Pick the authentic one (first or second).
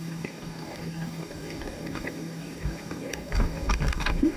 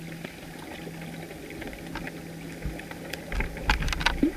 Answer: second